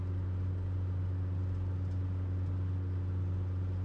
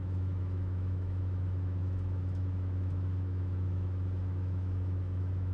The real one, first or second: first